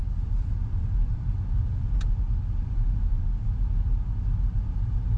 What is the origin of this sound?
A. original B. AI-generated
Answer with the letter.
A